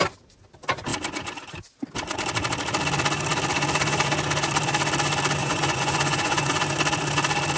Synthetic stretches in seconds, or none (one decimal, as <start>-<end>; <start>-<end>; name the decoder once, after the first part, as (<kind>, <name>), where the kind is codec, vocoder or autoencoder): 5.4-6.5 (vocoder, Vocos)